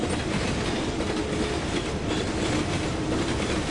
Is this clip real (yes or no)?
yes